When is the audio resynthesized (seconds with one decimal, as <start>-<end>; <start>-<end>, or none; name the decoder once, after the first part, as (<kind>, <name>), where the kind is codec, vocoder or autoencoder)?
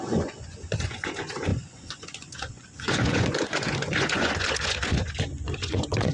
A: 0.0-6.1 (vocoder, Vocos)